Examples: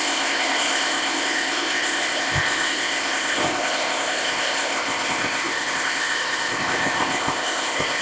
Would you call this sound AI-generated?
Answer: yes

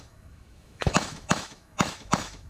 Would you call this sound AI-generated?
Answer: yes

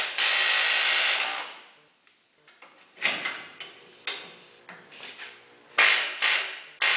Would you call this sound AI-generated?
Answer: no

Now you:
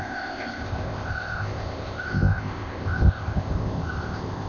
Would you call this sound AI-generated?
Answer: yes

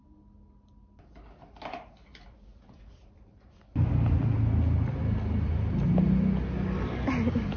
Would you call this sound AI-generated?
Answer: no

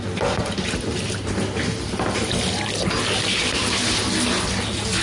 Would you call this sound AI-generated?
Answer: no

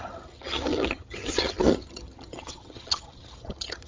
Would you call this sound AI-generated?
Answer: yes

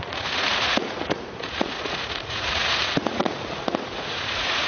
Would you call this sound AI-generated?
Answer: yes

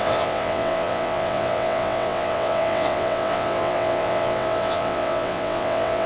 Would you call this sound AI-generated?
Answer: yes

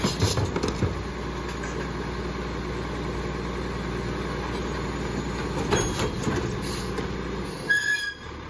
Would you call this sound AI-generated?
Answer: no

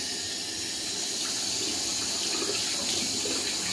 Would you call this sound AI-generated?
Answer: no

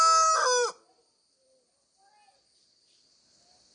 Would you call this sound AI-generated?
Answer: no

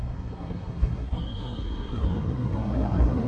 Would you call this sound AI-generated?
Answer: yes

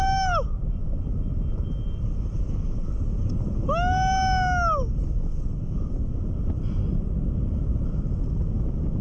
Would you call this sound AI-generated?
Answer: no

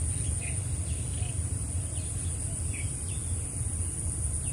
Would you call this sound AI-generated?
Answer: no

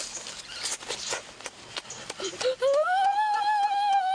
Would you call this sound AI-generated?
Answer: no